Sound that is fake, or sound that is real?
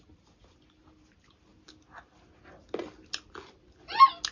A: real